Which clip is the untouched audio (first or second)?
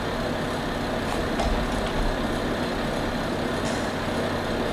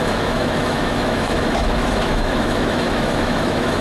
first